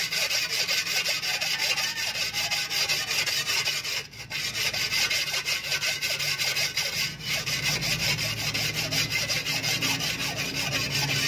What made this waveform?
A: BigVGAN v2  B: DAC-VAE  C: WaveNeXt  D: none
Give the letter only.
D